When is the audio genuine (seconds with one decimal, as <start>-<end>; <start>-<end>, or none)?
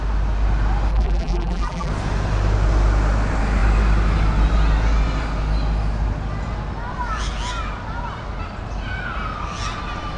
0.0-0.9; 1.9-10.2